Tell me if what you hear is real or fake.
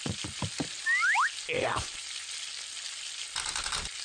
real